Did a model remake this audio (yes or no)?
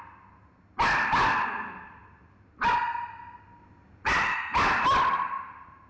no